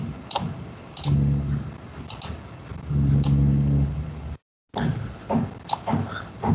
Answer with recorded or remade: recorded